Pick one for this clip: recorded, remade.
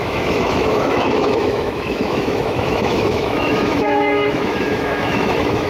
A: remade